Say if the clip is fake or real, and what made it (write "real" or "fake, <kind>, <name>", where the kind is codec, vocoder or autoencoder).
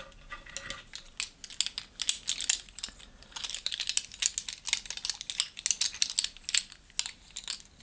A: real